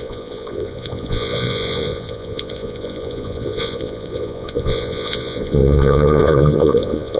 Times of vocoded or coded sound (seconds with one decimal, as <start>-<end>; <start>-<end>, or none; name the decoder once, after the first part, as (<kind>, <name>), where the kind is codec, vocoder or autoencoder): 0.0-7.2 (vocoder, Vocos)